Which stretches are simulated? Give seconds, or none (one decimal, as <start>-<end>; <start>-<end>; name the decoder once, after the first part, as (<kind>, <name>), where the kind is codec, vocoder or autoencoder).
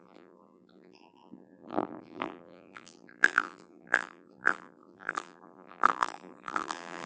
0.0-7.1 (vocoder, BigVGAN v2)